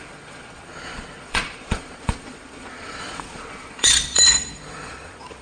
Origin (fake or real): fake